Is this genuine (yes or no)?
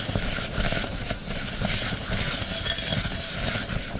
yes